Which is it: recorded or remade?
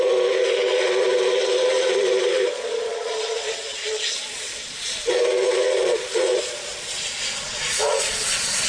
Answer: remade